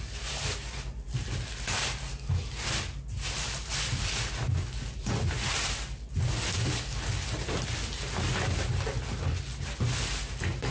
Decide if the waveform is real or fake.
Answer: real